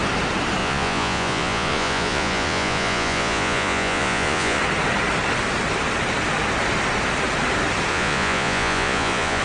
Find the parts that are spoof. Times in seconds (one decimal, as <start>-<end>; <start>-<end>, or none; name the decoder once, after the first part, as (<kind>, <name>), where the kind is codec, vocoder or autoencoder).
0.6-4.6 (vocoder, Vocos); 7.9-9.4